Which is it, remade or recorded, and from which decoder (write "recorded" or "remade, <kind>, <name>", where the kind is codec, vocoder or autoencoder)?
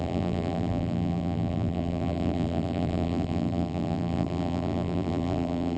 remade, vocoder, BigVGAN v2